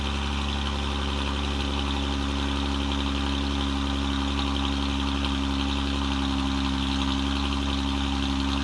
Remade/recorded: recorded